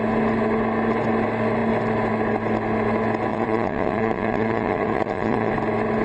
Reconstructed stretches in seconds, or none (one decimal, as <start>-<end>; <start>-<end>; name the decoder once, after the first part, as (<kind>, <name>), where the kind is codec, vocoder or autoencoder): 3.3-5.5 (vocoder, Vocos)